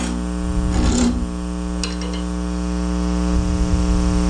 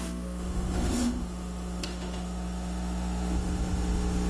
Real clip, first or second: first